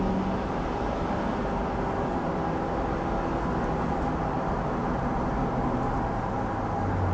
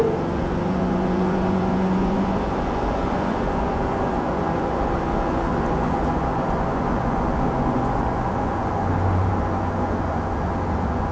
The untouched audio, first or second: first